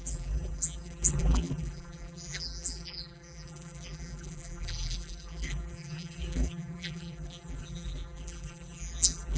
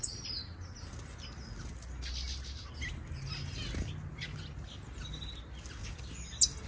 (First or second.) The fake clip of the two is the first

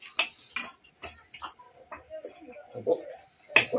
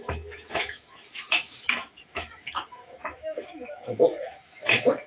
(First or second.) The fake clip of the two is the second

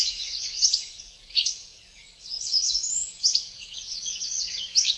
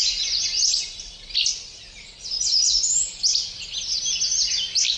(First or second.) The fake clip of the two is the first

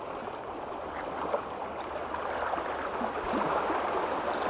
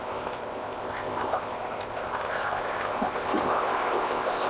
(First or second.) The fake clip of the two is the second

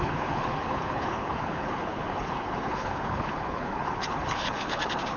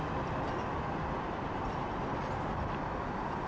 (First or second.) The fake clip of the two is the first